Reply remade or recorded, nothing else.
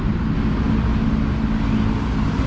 recorded